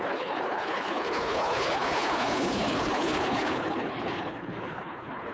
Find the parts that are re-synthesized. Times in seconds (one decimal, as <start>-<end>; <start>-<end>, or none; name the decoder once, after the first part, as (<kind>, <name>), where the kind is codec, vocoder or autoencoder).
0.0-5.3 (codec, HILCodec)